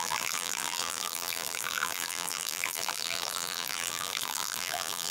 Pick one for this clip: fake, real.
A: fake